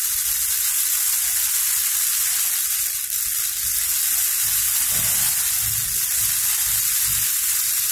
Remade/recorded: recorded